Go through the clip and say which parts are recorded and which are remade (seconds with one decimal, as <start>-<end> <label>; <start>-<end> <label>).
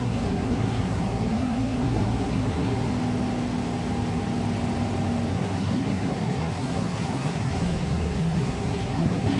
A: 0.0-2.9 remade; 2.9-5.3 recorded; 5.3-9.4 remade